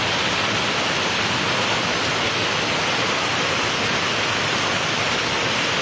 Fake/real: real